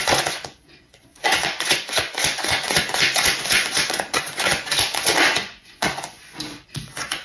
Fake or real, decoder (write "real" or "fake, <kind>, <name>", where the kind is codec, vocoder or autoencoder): fake, vocoder, Vocos